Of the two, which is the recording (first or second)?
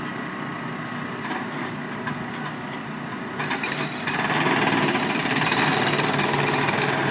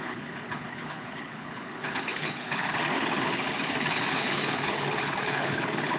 first